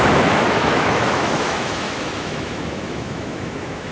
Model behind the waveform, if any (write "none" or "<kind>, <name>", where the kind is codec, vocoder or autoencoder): autoencoder, DAC-VAE